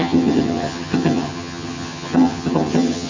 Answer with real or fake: fake